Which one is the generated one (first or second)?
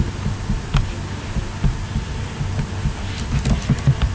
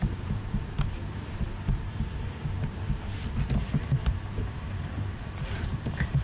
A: second